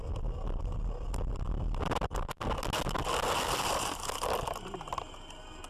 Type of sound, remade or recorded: recorded